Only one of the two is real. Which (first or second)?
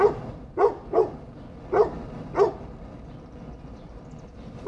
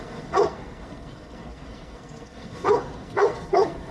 first